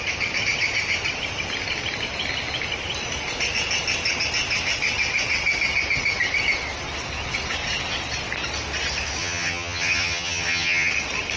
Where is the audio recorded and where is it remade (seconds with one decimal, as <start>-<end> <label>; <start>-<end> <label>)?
0.0-9.2 recorded; 9.2-10.9 remade; 10.9-11.4 recorded

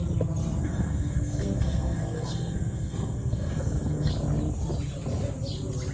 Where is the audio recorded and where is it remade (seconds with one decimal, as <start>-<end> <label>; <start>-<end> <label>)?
0.0-0.6 recorded; 0.6-4.1 remade; 4.1-5.9 recorded

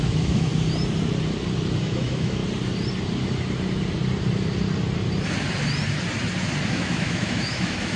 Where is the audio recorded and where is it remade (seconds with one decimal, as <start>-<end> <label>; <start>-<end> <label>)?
0.0-0.5 remade; 0.5-1.8 recorded; 1.8-2.4 remade; 2.4-6.7 recorded; 6.7-8.0 remade

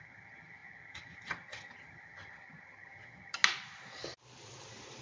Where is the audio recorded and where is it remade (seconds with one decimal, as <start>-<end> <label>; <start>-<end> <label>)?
0.0-3.4 remade; 3.4-5.0 recorded

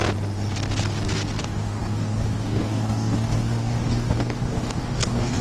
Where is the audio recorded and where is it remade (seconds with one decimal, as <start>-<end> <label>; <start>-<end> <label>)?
0.0-1.4 recorded; 1.4-5.4 remade

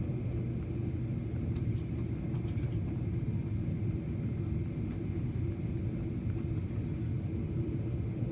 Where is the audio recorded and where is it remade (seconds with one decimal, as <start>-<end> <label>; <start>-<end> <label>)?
0.0-8.3 recorded

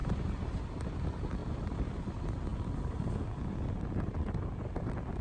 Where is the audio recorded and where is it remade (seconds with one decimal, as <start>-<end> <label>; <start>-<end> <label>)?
0.0-1.4 recorded; 1.4-2.1 remade; 2.1-5.2 recorded